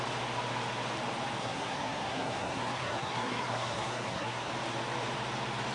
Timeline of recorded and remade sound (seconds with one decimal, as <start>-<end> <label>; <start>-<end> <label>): 0.0-1.4 recorded; 1.4-4.5 remade; 4.5-5.7 recorded